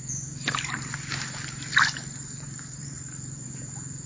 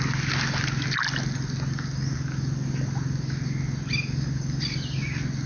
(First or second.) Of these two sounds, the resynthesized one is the first